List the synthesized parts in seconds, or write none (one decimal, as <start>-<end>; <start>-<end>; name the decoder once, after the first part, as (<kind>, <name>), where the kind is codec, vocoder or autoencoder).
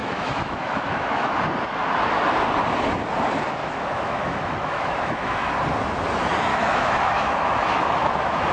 0.0-1.4 (autoencoder, DAC-VAE); 3.6-5.5; 6.5-8.5